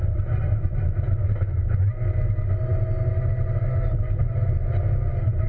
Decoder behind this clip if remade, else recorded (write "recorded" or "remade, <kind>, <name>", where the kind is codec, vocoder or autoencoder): recorded